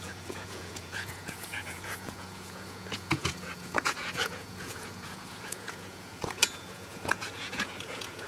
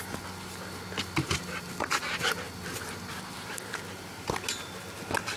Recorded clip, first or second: second